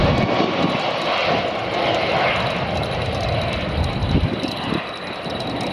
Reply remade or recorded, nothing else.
recorded